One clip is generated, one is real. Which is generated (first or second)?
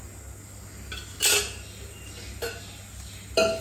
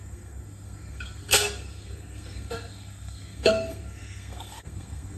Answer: second